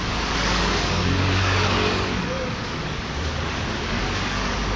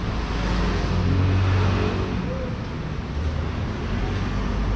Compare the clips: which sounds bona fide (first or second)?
second